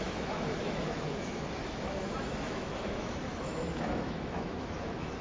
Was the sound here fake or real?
fake